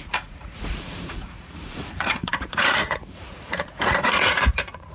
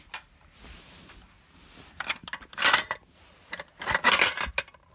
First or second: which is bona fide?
second